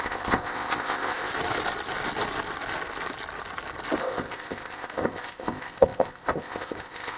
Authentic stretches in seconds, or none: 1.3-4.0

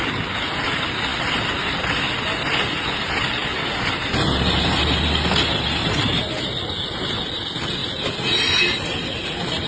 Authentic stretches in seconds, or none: 0.0-9.7

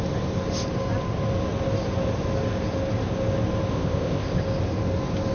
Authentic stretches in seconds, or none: 0.0-3.7; 4.4-5.3

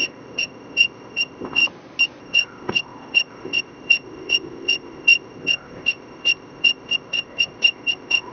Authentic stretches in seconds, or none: 1.6-2.2

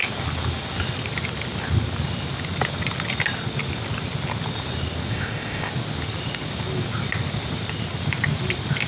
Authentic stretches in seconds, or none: 0.0-5.1; 5.7-8.9

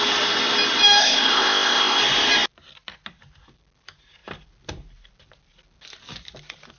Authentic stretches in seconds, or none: 0.0-1.0; 2.0-6.8

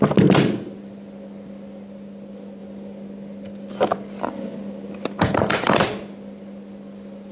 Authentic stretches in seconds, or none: 0.0-7.3

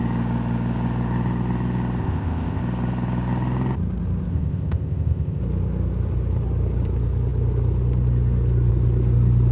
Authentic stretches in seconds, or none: 0.0-2.0; 2.6-4.3; 5.4-9.5